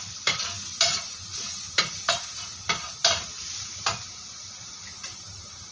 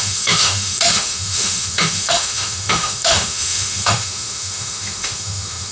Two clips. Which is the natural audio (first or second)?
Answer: first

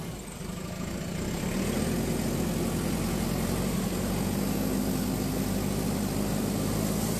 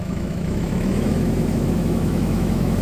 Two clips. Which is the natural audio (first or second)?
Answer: first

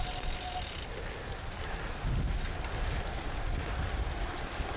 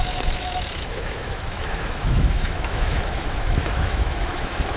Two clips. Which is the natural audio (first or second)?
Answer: first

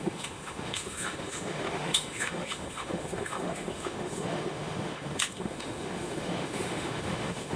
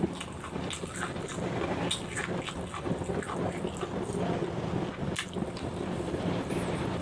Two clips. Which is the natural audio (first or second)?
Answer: second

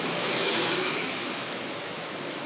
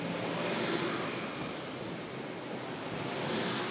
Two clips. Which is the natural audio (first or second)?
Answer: second